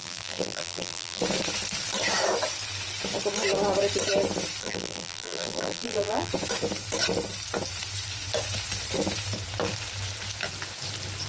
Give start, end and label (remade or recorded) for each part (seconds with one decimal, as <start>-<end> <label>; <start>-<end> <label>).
0.0-1.2 remade; 1.2-4.6 recorded; 4.6-6.3 remade; 6.3-11.3 recorded